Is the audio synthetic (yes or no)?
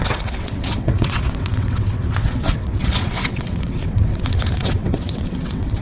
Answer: yes